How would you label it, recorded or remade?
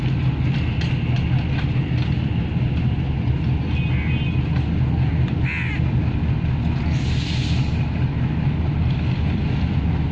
recorded